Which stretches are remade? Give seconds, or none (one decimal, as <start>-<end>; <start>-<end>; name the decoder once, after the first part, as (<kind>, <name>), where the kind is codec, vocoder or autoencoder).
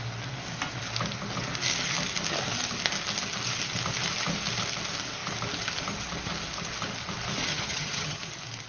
7.5-8.2 (vocoder, HiFi-GAN)